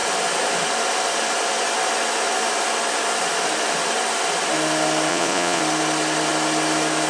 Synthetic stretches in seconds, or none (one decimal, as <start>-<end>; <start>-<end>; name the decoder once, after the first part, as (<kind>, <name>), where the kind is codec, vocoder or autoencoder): 5.1-5.6 (vocoder, Vocos)

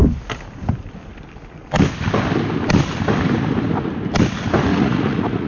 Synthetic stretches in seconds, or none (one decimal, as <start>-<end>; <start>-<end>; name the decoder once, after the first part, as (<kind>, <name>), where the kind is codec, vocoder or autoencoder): 4.7-5.5 (vocoder, Vocos)

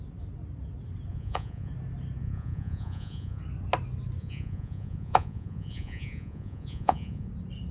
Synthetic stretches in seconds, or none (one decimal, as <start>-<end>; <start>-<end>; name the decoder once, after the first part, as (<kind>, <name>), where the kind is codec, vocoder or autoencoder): 1.1-1.7 (vocoder, Vocos); 2.2-3.4; 4.2-7.3

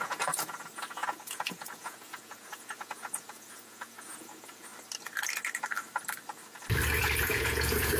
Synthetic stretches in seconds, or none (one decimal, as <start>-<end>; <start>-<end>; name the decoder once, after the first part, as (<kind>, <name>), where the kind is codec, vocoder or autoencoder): 0.0-4.7 (vocoder, Vocos); 7.0-8.0

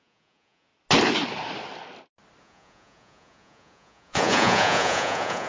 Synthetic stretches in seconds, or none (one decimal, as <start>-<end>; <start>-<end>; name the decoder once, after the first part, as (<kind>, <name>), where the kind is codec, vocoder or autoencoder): 0.0-0.7 (vocoder, Vocos); 2.4-5.5

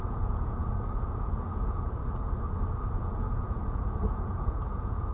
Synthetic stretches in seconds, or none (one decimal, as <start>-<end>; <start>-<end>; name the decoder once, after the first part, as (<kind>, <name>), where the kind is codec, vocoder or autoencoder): 0.0-2.0 (vocoder, Vocos); 2.8-5.1